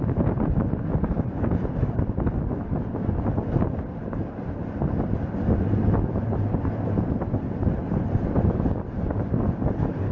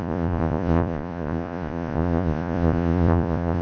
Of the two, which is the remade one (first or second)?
second